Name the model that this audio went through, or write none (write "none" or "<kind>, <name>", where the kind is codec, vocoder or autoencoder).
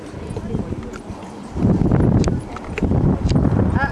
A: none